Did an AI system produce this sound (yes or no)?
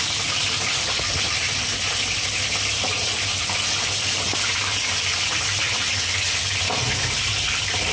no